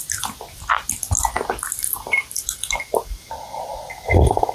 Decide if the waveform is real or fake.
real